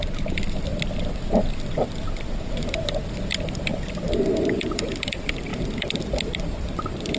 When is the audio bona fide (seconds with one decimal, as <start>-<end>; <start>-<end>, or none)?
none